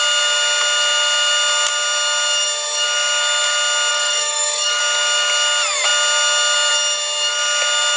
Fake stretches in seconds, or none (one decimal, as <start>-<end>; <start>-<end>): 3.9-4.8